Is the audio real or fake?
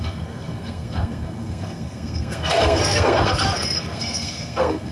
fake